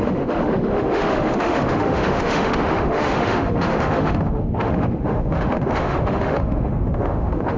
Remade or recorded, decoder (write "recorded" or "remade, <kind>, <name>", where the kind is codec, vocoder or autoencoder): remade, autoencoder, DAC-VAE